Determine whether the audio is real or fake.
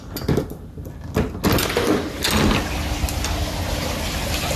real